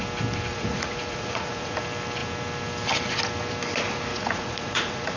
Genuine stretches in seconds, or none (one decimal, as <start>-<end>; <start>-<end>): 0.0-0.5; 1.8-4.1